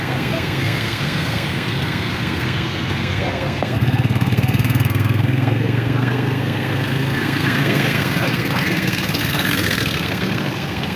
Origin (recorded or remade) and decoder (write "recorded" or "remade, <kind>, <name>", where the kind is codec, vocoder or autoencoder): remade, codec, SNAC